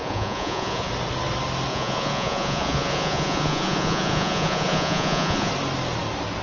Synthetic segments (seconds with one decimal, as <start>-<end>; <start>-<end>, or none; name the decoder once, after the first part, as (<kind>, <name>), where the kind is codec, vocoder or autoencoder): 0.0-0.9 (vocoder, Vocos); 1.7-5.5